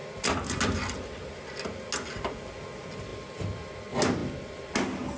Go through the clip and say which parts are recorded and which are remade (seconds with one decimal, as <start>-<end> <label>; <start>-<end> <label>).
0.0-5.2 recorded